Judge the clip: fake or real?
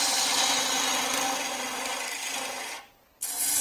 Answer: real